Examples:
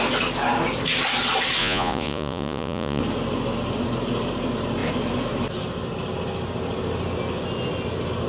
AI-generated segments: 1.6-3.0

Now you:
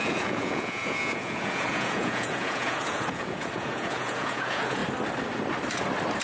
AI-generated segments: 0.0-4.8

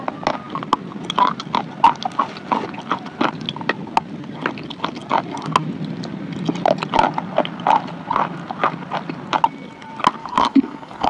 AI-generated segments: 10.2-11.1

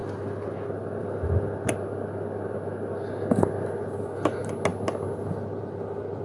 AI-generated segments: none

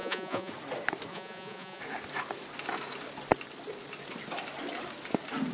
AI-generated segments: 0.0-0.5; 1.1-1.8

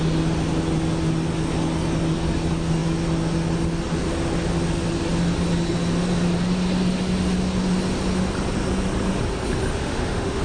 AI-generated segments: 9.7-10.4

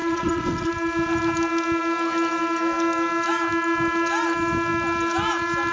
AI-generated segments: 0.0-0.7

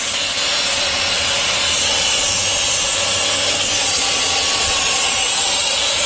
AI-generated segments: 0.7-2.2; 3.8-6.1